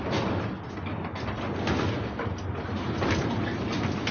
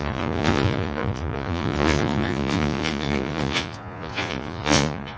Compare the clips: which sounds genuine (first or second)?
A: first